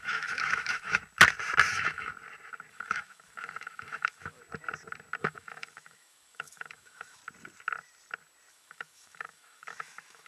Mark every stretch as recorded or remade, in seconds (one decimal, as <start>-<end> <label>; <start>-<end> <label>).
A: 0.0-1.0 remade; 1.0-1.7 recorded; 1.7-2.1 remade; 2.1-2.7 recorded; 2.7-4.4 remade; 4.4-5.2 recorded; 5.2-7.2 remade; 7.2-8.5 recorded; 8.5-10.3 remade